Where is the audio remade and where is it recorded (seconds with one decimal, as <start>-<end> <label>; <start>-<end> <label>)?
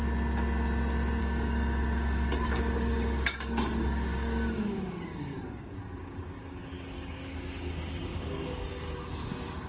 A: 0.0-1.2 recorded; 1.2-9.7 remade